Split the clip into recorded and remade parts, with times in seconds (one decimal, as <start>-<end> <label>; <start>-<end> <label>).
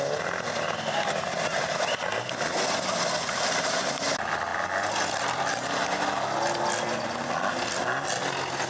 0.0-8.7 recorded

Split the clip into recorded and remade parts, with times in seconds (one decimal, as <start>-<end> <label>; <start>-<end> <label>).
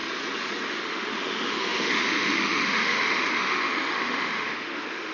0.0-0.7 recorded; 0.7-5.1 remade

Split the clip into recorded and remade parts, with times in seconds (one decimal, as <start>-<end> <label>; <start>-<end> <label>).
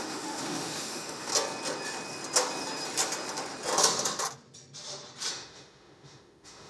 0.0-1.3 remade; 1.3-5.3 recorded; 5.3-6.7 remade